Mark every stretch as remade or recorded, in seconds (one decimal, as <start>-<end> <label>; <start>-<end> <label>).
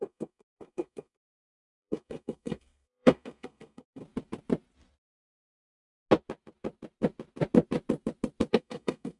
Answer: 0.0-4.0 remade; 4.0-8.5 recorded; 8.5-9.2 remade